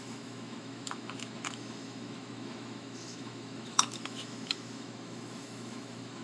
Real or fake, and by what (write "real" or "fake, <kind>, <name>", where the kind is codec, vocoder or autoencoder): fake, autoencoder, DAC-VAE